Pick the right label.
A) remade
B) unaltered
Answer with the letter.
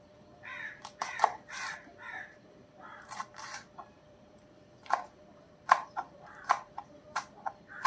A